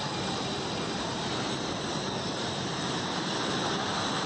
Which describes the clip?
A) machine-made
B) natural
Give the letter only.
A